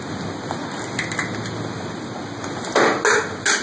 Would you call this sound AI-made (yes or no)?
no